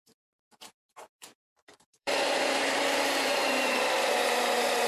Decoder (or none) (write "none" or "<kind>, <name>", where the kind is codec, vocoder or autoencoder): vocoder, BigVGAN v2